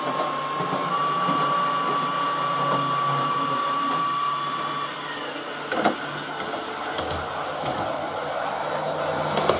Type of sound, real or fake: real